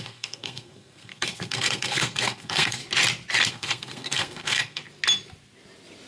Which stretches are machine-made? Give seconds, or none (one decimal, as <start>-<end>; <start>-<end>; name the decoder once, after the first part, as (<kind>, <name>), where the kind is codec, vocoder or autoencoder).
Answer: 0.0-2.8 (codec, SNAC); 3.5-4.8